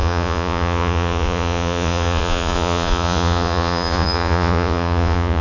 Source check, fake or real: fake